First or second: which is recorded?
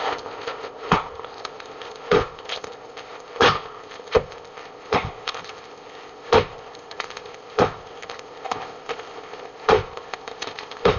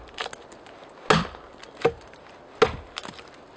second